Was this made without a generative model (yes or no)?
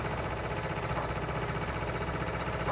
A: yes